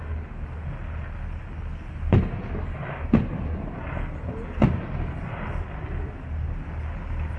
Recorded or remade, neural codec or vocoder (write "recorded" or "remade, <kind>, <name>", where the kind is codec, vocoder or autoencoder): recorded